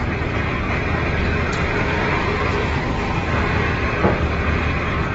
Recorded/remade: recorded